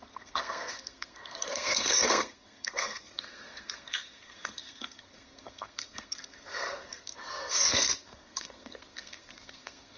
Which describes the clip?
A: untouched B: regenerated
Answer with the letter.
B